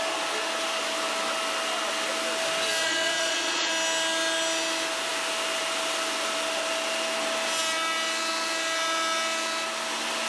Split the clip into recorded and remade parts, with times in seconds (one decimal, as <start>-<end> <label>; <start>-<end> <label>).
0.0-2.8 recorded; 2.8-3.7 remade; 3.7-10.3 recorded